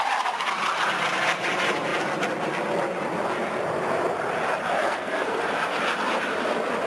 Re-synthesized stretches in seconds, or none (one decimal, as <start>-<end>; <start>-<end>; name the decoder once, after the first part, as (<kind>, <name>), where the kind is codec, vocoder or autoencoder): 4.8-5.4 (codec, SNAC)